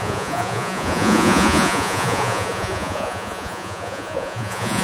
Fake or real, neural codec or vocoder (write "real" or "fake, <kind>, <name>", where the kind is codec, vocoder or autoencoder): fake, vocoder, Vocos